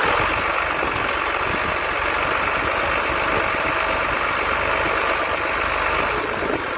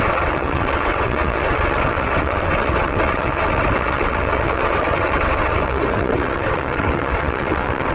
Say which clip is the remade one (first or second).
second